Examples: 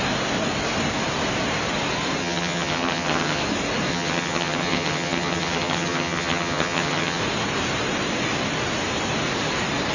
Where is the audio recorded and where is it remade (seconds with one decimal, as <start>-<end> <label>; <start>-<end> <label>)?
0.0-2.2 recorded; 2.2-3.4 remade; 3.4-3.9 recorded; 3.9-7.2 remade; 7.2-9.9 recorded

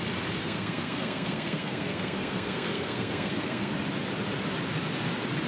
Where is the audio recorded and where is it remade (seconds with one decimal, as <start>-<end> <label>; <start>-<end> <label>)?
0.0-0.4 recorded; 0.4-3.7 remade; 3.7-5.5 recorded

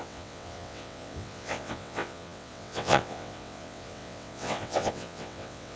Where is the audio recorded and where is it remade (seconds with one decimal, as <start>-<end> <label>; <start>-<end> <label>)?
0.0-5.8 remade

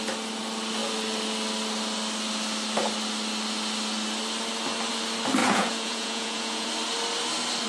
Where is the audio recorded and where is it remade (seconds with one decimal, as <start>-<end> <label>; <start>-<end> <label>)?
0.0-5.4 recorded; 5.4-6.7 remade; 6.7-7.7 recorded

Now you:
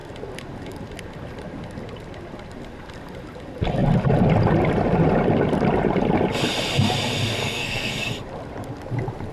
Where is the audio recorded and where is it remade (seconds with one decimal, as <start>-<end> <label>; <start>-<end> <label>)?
0.0-7.3 recorded; 7.3-7.9 remade; 7.9-9.3 recorded

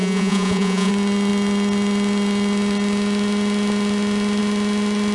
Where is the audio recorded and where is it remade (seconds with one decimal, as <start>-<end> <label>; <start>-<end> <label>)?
0.0-0.9 remade; 0.9-5.1 recorded